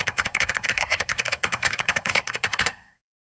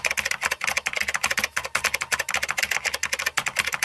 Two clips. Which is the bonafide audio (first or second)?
second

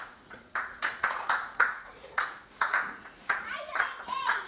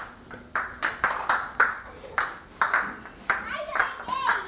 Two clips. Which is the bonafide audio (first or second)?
second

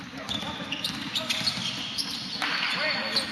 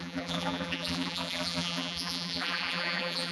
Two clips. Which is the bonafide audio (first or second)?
first